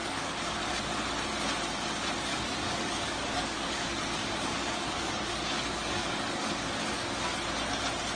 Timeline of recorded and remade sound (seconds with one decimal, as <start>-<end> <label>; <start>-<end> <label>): 0.0-0.7 remade; 0.7-2.3 recorded; 2.3-7.2 remade; 7.2-8.2 recorded